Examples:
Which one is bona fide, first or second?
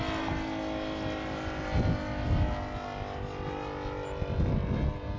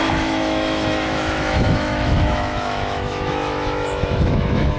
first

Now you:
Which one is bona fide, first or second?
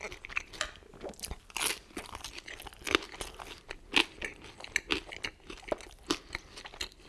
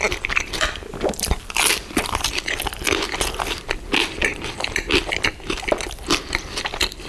first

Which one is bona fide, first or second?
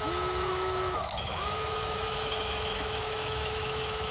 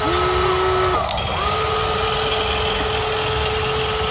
second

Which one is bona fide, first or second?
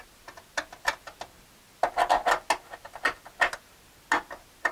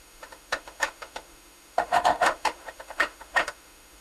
first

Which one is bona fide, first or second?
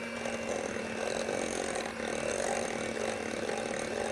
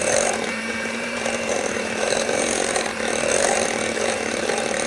first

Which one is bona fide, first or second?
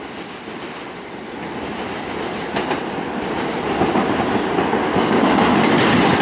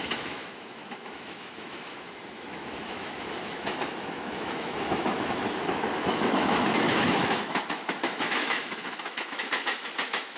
first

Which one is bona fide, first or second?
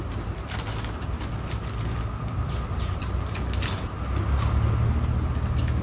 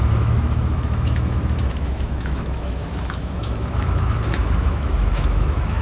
first